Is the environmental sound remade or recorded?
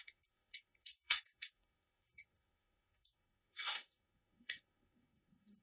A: remade